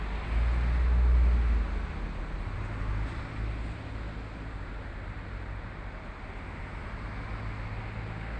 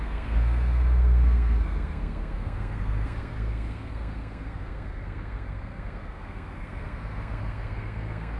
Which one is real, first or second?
first